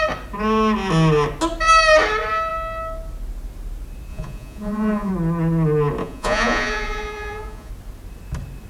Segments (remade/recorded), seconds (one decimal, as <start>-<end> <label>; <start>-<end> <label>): 0.0-4.1 recorded; 4.1-5.1 remade; 5.1-6.0 recorded; 6.0-7.7 remade; 7.7-8.7 recorded